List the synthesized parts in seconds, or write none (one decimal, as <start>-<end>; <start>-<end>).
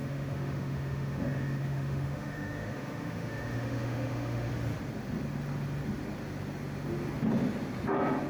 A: 0.0-4.5